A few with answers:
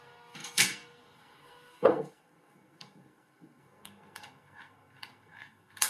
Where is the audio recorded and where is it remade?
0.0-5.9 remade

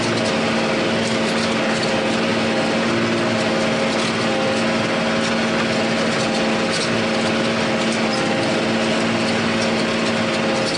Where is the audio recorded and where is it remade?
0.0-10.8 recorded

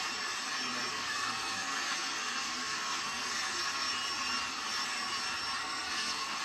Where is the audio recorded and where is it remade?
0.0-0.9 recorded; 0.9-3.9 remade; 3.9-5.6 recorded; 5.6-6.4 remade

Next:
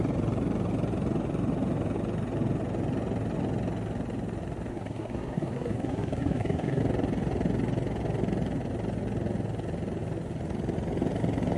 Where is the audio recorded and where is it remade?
0.0-4.7 recorded; 4.7-6.8 remade; 6.8-11.6 recorded